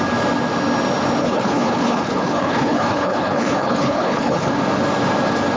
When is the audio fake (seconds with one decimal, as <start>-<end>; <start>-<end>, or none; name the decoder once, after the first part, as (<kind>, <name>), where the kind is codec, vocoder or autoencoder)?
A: 1.2-4.6 (codec, HILCodec)